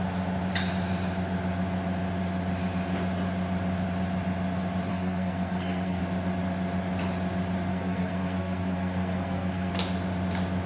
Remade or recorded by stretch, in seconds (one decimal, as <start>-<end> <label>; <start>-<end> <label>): 0.0-4.9 recorded; 4.9-6.0 remade; 6.0-7.7 recorded; 7.7-9.7 remade; 9.7-10.7 recorded